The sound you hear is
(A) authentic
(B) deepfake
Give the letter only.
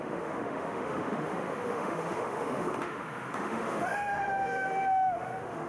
B